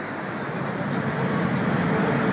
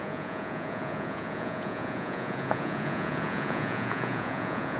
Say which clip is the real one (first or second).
first